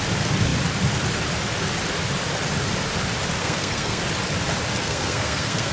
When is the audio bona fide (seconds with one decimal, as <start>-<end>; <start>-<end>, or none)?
0.0-3.4; 4.0-4.8